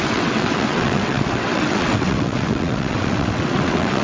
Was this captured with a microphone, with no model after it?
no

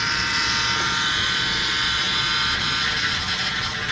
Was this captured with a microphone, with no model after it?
no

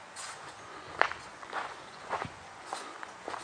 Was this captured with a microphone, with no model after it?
no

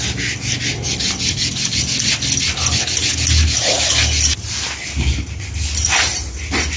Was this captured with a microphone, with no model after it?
yes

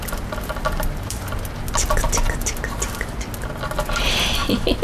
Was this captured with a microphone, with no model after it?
yes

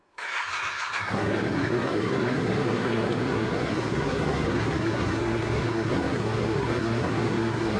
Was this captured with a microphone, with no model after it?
no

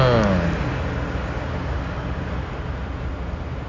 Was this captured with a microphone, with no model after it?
yes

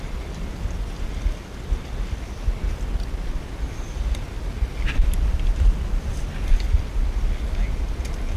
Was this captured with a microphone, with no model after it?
yes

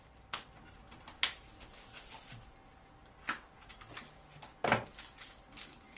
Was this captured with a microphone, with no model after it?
yes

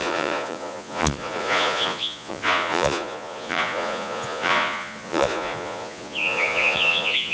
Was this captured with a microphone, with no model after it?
no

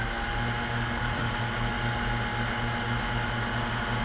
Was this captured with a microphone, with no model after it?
yes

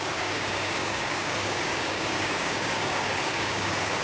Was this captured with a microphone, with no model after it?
no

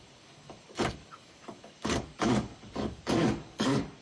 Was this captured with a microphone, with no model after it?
no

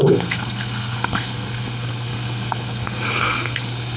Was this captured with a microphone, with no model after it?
no